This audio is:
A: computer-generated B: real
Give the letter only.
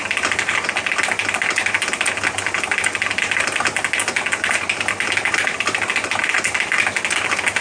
B